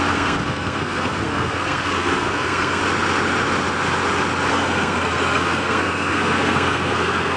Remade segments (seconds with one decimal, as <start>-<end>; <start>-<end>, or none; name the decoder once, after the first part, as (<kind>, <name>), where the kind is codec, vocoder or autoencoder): 0.0-2.8 (codec, SNAC); 4.5-7.4